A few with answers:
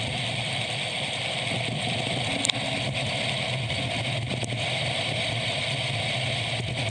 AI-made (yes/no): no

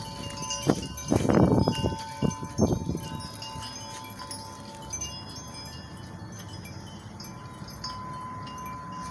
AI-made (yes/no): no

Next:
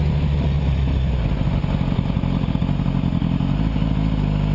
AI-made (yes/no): no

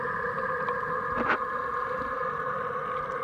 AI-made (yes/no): no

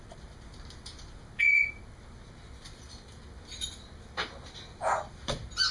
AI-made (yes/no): no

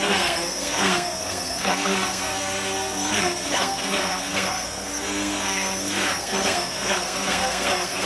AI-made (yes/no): yes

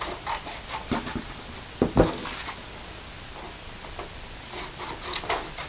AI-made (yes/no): no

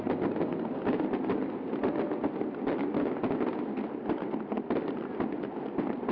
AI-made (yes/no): no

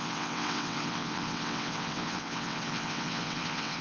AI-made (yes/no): yes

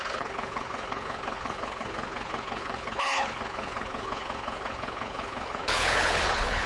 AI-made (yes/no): yes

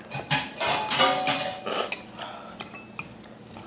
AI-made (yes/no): no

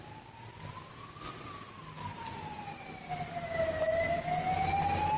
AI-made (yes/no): no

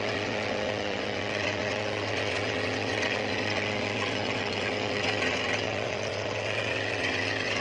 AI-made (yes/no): yes